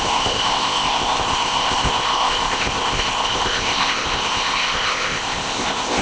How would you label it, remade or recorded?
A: remade